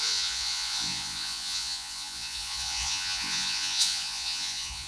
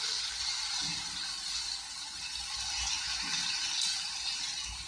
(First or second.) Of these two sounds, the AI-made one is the first